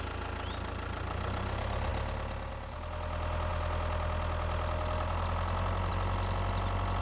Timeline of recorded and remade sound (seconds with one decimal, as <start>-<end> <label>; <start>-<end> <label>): 0.0-7.0 recorded